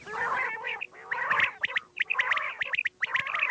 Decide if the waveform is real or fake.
real